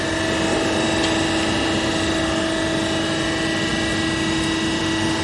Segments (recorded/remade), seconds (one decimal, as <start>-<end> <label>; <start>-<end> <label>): 0.0-5.2 recorded